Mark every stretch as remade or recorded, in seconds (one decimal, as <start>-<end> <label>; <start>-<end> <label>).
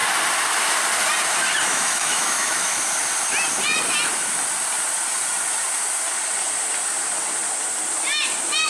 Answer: 0.0-1.7 recorded; 1.7-2.8 remade; 2.8-8.7 recorded